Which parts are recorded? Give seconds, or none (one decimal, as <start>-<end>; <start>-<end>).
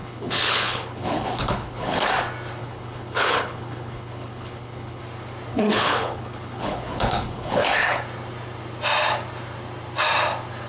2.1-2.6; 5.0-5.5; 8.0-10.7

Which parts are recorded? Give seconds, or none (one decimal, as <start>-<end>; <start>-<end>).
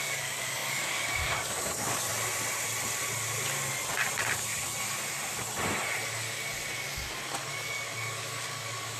2.1-7.2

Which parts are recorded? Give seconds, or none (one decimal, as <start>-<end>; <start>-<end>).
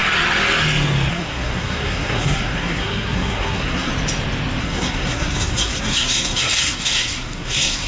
0.0-1.1; 3.9-4.6